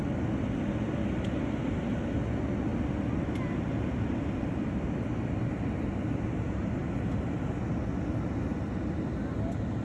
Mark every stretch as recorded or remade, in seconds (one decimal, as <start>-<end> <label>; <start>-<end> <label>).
0.0-9.8 recorded